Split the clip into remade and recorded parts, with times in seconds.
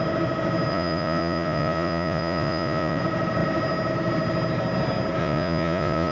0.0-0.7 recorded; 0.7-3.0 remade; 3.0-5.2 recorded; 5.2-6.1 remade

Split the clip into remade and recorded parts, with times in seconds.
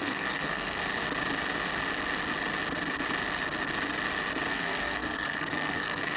0.0-0.8 remade; 0.8-4.5 recorded; 4.5-6.2 remade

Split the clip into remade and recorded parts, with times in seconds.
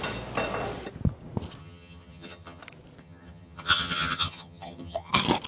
0.0-1.6 recorded; 1.6-2.6 remade; 2.6-3.0 recorded; 3.0-5.1 remade; 5.1-5.5 recorded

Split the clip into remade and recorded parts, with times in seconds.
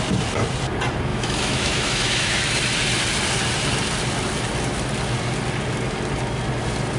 0.0-1.1 recorded; 1.1-2.4 remade; 2.4-7.0 recorded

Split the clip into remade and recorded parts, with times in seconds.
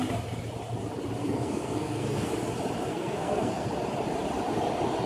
0.0-1.2 recorded; 1.2-2.3 remade; 2.3-2.9 recorded; 2.9-3.7 remade; 3.7-5.1 recorded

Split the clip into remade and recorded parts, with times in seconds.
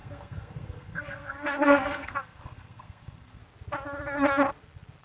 0.0-3.4 remade; 3.4-5.0 recorded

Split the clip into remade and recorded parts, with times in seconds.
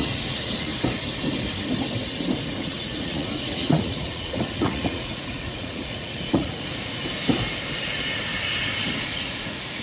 0.0-0.7 remade; 0.7-2.6 recorded; 2.6-6.7 remade; 6.7-7.7 recorded; 7.7-8.2 remade; 8.2-8.9 recorded; 8.9-9.8 remade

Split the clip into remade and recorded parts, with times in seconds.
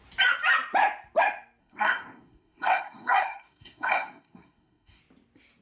0.0-1.6 recorded; 1.6-5.0 remade; 5.0-5.6 recorded